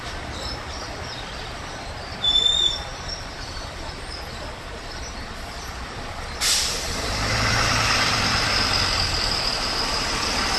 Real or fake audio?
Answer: fake